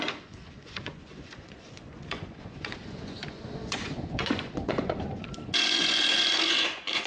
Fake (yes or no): yes